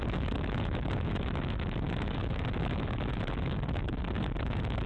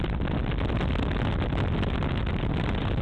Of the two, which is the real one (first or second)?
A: second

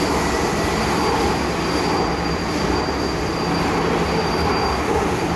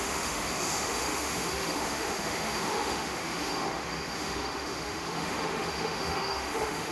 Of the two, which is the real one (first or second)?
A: first